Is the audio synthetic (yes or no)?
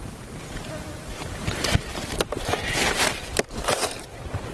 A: yes